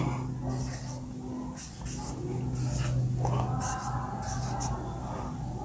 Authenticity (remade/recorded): recorded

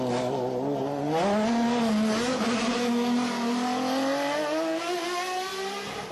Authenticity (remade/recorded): recorded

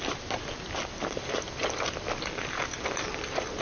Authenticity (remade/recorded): remade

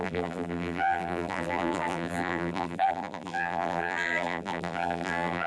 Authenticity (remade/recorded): remade